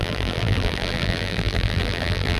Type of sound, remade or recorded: remade